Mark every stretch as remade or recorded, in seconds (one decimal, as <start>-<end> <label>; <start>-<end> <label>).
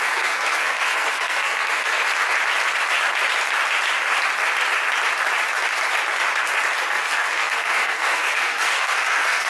0.0-2.0 remade; 2.0-6.8 recorded; 6.8-9.5 remade